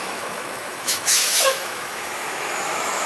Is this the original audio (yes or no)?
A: no